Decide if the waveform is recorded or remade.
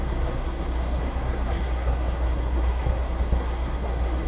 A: remade